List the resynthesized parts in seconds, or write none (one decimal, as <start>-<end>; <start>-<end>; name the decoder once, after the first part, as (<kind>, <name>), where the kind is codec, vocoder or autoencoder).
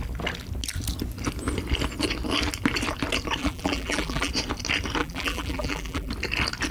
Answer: 3.4-4.3 (vocoder, BigVGAN v2); 5.0-6.1